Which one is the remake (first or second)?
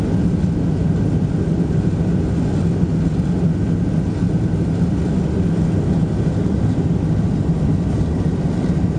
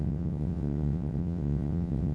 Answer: second